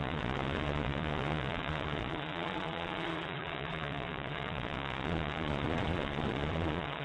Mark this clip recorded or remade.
remade